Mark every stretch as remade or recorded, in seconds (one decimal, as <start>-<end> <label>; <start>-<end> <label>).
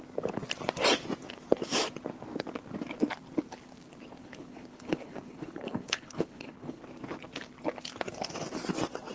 0.0-4.2 recorded; 4.2-6.8 remade; 6.8-9.1 recorded